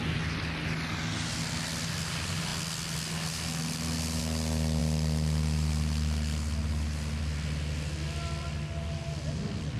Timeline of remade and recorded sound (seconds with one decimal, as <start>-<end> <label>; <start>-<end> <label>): 0.0-9.8 recorded